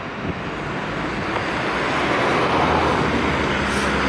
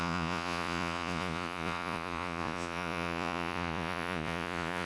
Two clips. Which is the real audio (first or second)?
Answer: first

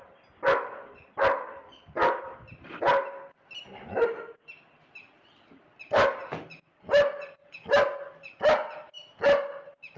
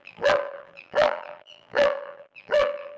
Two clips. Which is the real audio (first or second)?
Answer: first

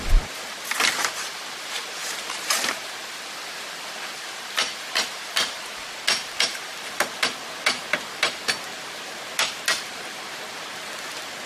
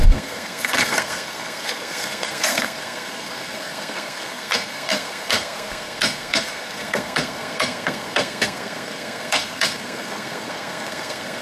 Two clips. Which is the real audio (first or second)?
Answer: first